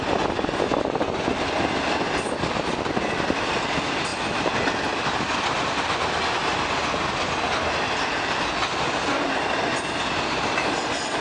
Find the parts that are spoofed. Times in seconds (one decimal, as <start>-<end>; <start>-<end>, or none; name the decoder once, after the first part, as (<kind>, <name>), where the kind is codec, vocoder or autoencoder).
none